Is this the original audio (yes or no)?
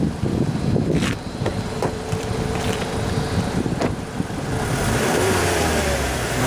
no